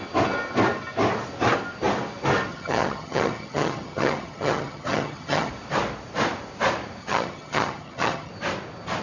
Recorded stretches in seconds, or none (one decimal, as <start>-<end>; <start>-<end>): 0.0-2.5; 5.5-7.0; 8.3-9.0